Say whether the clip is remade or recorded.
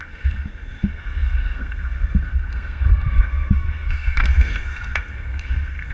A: remade